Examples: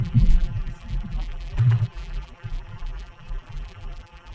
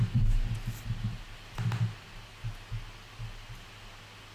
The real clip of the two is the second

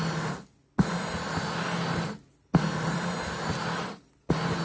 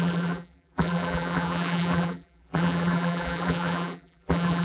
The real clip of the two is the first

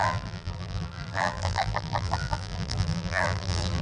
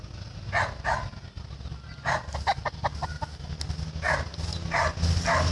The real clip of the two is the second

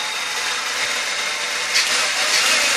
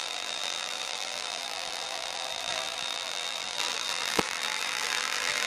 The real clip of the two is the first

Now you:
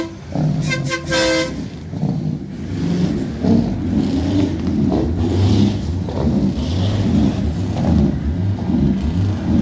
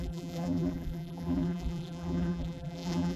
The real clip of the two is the first